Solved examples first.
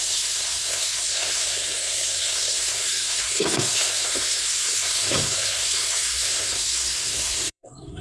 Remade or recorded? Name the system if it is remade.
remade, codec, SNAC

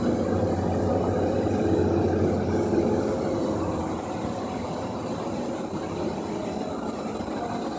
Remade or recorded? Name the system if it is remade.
recorded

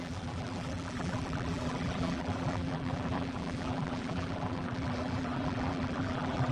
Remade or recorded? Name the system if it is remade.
remade, vocoder, BigVGAN v2